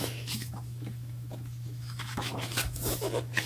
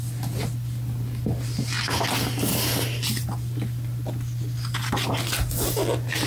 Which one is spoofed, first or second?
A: first